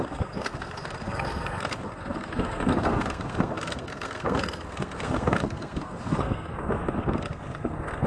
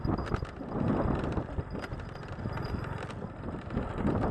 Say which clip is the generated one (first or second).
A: first